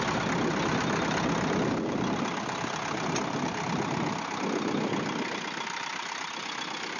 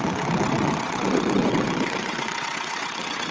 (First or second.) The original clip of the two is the first